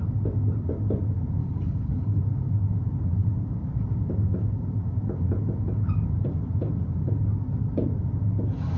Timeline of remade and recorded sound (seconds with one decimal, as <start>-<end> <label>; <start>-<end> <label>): 0.0-1.4 recorded; 1.4-2.2 remade; 2.2-8.8 recorded